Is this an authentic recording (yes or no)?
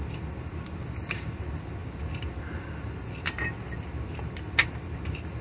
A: yes